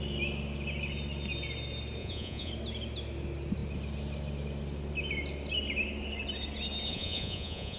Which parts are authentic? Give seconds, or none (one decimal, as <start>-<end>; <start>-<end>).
0.0-2.0; 2.5-6.9